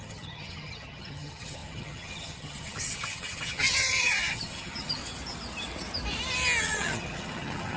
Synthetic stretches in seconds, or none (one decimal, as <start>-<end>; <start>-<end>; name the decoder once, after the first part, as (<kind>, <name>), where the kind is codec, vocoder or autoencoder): 0.0-5.0 (vocoder, HiFi-GAN); 6.6-7.8